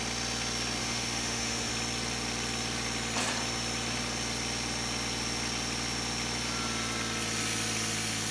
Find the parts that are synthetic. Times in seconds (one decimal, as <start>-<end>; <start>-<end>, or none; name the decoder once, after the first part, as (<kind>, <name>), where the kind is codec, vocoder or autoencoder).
0.8-1.7 (autoencoder, DAC-VAE)